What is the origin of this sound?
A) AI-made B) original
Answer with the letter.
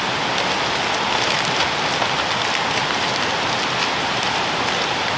B